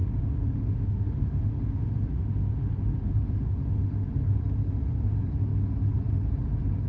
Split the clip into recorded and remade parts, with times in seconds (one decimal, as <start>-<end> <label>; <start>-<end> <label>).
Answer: 0.0-4.1 remade; 4.1-6.9 recorded